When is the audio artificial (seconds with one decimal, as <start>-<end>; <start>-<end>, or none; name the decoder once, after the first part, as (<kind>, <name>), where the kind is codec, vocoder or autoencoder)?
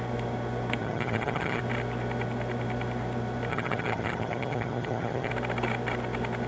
0.8-1.6 (vocoder, HiFi-GAN); 3.5-5.3